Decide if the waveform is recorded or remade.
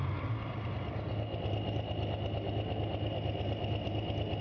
recorded